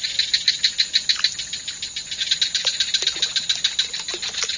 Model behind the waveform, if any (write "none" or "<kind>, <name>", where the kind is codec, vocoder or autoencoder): none